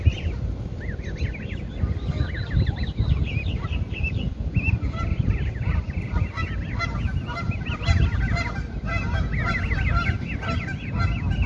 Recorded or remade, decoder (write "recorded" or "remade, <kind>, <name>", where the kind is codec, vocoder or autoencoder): recorded